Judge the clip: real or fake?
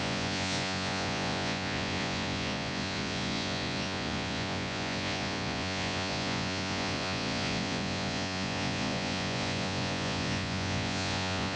fake